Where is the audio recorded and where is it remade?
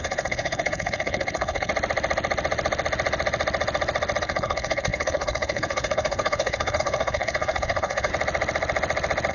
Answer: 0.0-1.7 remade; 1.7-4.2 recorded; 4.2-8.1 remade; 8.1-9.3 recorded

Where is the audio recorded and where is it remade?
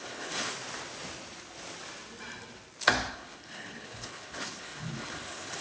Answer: 0.0-0.5 remade; 0.5-3.1 recorded; 3.1-5.6 remade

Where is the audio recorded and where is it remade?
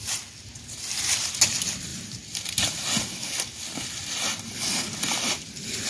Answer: 0.0-5.9 recorded